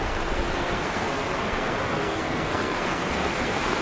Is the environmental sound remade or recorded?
remade